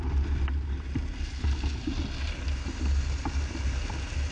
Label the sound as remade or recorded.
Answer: recorded